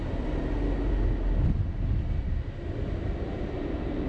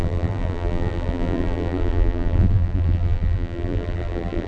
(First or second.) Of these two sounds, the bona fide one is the first